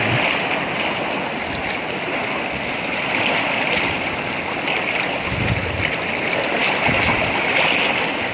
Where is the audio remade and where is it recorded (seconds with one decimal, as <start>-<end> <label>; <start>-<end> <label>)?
0.0-8.3 recorded